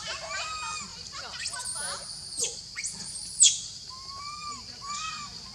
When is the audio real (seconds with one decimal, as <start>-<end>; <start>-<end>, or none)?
0.0-5.5